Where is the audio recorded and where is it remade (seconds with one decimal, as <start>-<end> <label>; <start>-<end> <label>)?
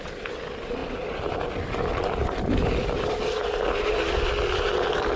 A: 0.0-5.2 recorded